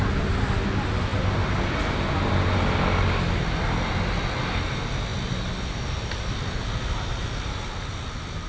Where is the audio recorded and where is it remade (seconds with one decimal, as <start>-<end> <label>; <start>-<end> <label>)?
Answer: 0.0-8.5 recorded